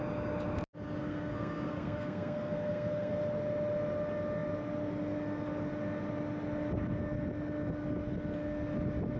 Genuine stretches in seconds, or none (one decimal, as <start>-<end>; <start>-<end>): 0.0-1.0; 3.1-9.2